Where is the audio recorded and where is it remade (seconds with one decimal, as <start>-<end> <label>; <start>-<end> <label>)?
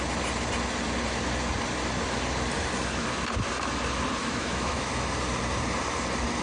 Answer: 0.0-4.2 recorded; 4.2-4.9 remade; 4.9-6.4 recorded